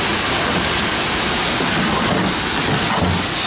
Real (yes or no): yes